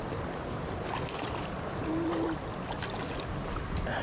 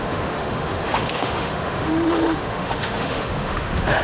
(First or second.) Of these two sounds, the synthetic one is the second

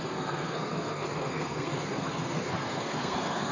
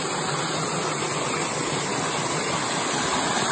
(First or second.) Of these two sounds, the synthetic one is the first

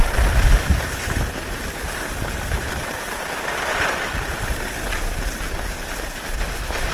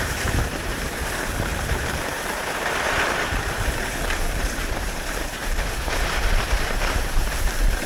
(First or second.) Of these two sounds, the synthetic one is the second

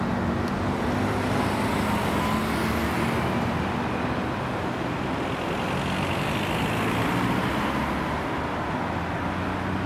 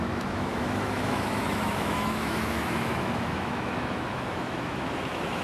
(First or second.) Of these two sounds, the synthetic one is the second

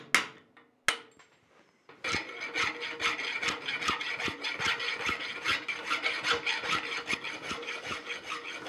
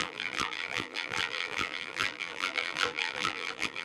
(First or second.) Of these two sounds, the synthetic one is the second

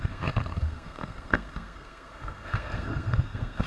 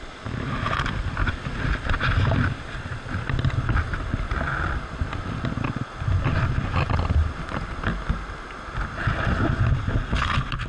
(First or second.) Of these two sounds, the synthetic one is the first